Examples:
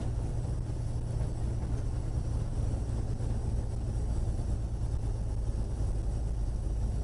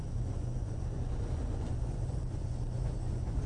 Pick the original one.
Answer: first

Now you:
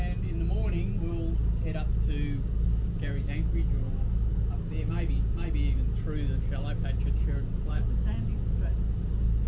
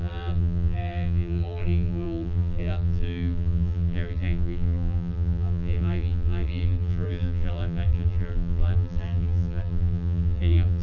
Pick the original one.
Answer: first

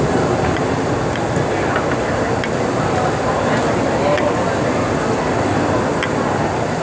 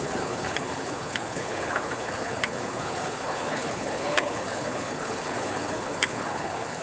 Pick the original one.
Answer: first